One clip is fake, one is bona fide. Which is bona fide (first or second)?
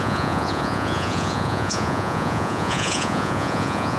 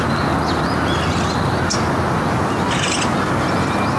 second